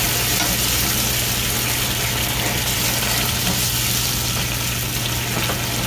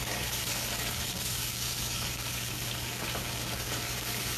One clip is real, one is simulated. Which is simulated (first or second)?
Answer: second